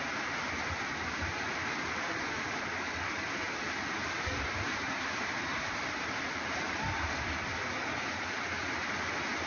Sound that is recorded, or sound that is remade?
recorded